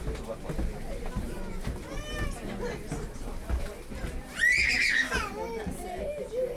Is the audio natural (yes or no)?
yes